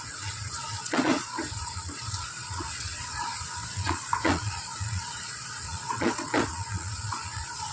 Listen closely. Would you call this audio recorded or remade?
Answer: remade